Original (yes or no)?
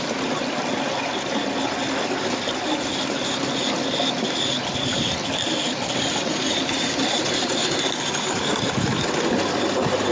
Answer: yes